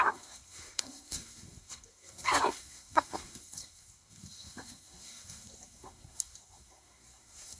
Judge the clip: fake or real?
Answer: fake